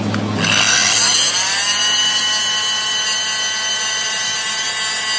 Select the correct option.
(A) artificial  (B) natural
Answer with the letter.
B